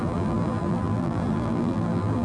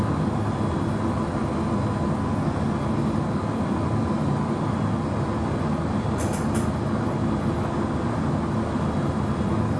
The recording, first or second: second